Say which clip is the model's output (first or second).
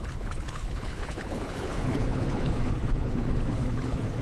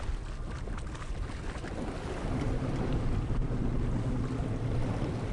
first